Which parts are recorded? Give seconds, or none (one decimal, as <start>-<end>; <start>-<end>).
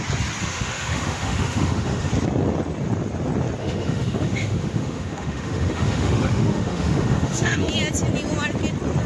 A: 0.0-0.4; 2.1-3.6; 7.7-9.1